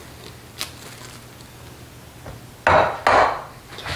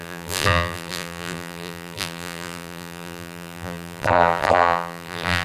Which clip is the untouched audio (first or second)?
first